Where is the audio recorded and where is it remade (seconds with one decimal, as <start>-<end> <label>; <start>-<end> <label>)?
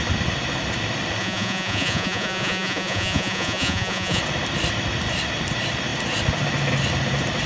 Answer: 0.0-1.2 recorded; 1.2-4.2 remade; 4.2-7.5 recorded